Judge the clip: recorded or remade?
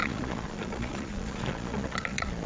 remade